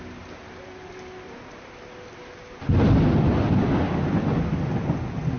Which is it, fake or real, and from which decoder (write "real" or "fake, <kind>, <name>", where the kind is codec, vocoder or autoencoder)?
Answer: real